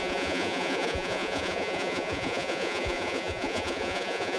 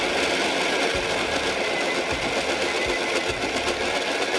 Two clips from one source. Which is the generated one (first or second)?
first